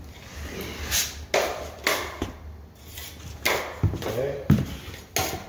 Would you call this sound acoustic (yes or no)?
yes